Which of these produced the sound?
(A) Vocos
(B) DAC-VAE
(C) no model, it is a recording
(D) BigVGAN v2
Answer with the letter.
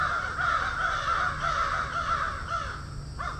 C